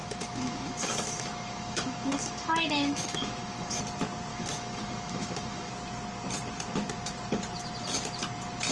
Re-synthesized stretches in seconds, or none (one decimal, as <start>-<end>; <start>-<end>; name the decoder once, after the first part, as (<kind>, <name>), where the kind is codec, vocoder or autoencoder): 0.0-3.8 (autoencoder, DAC-VAE); 4.3-5.7